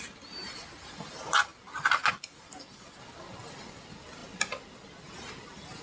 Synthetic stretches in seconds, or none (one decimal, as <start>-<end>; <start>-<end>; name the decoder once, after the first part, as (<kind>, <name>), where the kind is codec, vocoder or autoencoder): none